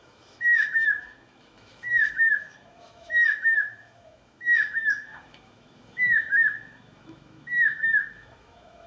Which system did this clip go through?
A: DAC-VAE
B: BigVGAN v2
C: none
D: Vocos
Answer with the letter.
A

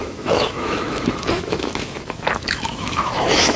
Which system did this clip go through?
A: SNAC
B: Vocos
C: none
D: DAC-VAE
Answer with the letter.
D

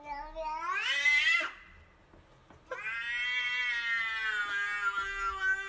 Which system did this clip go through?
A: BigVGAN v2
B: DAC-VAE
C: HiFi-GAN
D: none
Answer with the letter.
D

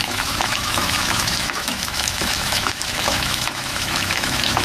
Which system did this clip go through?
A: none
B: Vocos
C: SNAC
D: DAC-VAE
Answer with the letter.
D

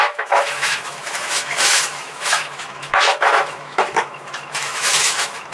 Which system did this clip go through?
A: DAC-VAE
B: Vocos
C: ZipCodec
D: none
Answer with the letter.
A